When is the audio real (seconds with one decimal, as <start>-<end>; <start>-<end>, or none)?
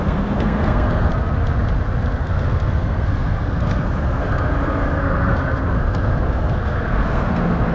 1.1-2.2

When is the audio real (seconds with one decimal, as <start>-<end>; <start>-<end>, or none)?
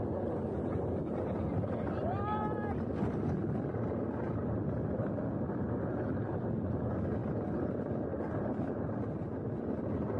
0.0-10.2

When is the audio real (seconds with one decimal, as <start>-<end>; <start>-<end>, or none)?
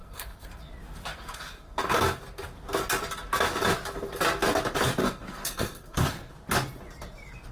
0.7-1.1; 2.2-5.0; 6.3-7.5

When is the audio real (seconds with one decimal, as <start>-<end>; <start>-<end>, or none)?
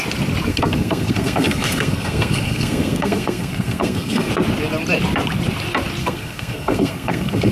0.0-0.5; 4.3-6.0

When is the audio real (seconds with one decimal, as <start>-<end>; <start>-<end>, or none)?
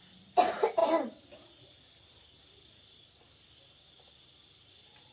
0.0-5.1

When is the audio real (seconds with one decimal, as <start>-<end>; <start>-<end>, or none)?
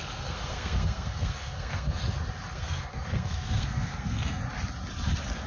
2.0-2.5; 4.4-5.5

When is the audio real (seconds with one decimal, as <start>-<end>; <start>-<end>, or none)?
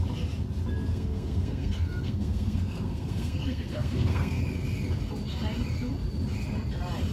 0.0-0.9; 4.4-7.1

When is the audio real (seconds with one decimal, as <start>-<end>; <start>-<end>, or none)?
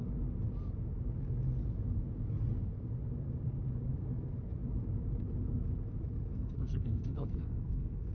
0.0-6.3